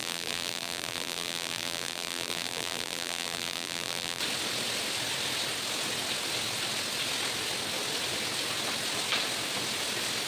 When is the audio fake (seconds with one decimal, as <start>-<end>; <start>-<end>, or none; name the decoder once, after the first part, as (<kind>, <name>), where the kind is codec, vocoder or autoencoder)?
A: 0.0-4.2 (vocoder, BigVGAN v2)